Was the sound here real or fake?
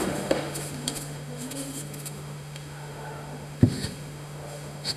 fake